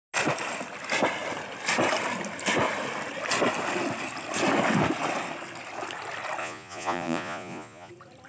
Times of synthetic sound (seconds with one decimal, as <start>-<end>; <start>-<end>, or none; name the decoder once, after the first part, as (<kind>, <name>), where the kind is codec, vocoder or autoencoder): 6.4-7.9 (vocoder, Vocos)